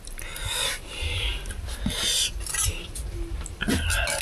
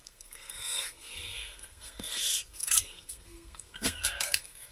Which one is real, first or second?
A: first